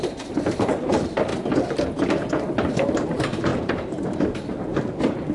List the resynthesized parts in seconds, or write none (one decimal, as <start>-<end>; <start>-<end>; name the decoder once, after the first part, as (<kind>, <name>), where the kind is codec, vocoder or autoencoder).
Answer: 0.0-1.3 (vocoder, BigVGAN v2); 2.0-5.3